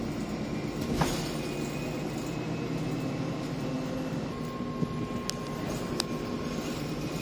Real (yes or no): yes